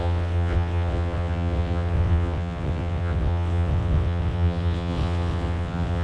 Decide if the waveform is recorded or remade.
remade